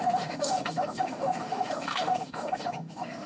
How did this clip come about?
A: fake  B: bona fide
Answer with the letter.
A